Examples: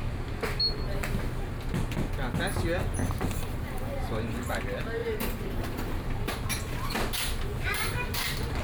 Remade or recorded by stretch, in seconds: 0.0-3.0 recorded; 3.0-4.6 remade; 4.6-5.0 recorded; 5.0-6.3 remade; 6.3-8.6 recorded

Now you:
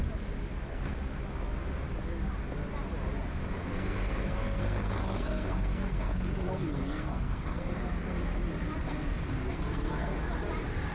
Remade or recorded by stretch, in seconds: 0.0-0.6 recorded; 0.6-1.2 remade; 1.2-3.6 recorded; 3.6-8.2 remade; 8.2-8.8 recorded; 8.8-10.2 remade; 10.2-10.9 recorded

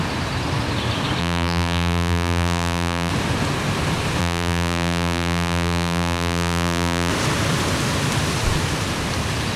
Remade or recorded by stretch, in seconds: 0.0-1.2 recorded; 1.2-3.1 remade; 3.1-4.2 recorded; 4.2-7.1 remade; 7.1-9.6 recorded

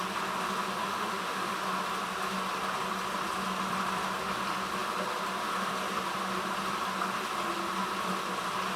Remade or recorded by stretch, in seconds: 0.0-0.8 recorded; 0.8-1.6 remade; 1.6-8.8 recorded